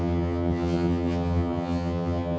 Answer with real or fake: fake